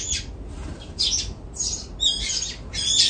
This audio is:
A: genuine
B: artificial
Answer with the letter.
A